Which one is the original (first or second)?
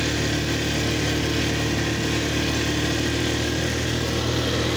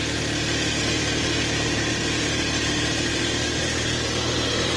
first